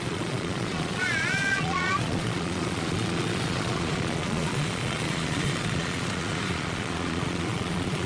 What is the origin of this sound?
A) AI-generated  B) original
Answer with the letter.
A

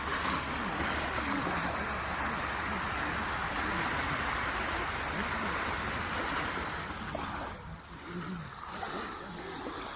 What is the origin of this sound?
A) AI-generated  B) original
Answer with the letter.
B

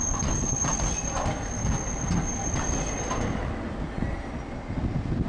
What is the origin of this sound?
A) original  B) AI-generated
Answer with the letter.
A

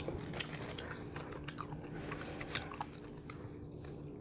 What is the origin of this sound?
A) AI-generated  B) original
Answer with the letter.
B